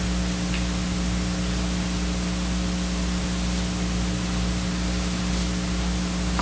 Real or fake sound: real